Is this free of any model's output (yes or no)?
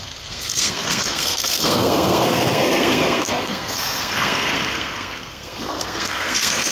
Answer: no